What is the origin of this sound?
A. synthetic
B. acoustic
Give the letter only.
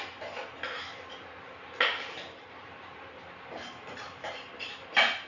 B